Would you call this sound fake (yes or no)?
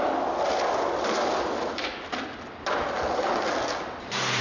no